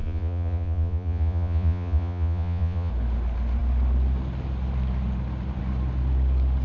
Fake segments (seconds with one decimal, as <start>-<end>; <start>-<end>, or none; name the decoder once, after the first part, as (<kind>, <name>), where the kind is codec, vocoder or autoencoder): 0.0-2.9 (vocoder, Vocos)